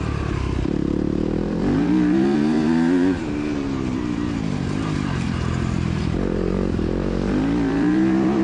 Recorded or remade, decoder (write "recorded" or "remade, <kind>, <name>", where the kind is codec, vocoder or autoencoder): remade, vocoder, BigVGAN v2